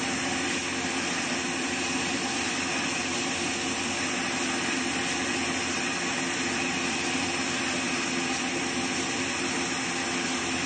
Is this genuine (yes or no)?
yes